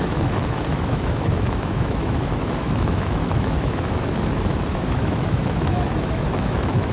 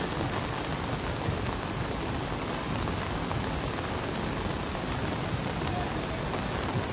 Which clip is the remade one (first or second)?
first